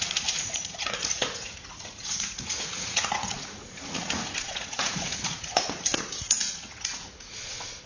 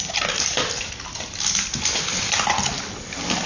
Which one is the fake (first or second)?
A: first